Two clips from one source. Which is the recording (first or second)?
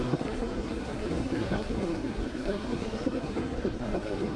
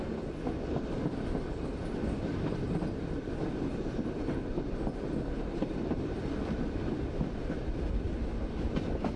second